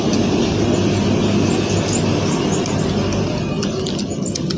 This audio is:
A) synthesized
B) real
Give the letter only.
B